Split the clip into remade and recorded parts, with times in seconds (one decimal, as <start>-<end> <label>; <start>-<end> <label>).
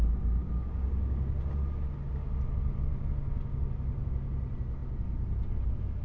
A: 0.0-0.4 recorded; 0.4-1.4 remade; 1.4-3.2 recorded; 3.2-3.7 remade; 3.7-6.0 recorded